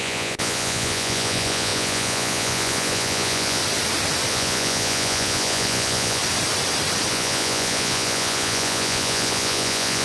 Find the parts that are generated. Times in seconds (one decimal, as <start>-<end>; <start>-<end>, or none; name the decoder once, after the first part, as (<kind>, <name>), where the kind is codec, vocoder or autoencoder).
0.0-3.6 (vocoder, Vocos); 4.3-6.2; 7.1-10.0